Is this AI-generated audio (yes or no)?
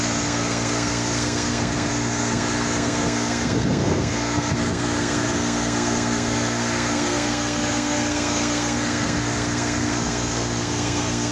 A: yes